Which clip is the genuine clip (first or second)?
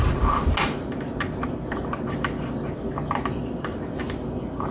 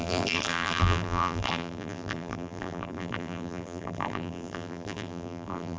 first